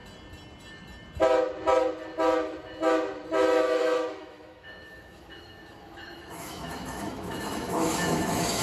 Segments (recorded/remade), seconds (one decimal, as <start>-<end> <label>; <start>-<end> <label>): 0.0-3.8 recorded; 3.8-8.6 remade